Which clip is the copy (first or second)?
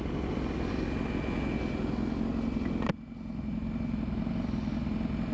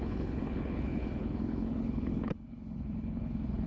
second